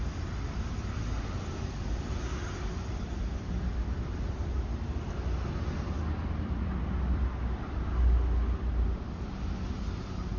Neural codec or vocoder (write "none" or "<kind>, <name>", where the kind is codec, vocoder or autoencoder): none